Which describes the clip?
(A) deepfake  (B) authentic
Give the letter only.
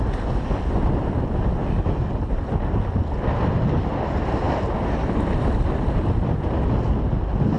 B